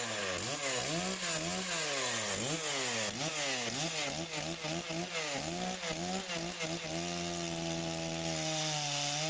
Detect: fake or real real